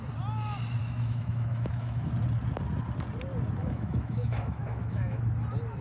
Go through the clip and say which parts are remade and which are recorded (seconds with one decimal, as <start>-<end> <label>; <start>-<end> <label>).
0.0-0.8 recorded; 0.8-2.1 remade; 2.1-3.6 recorded; 3.6-5.2 remade; 5.2-5.8 recorded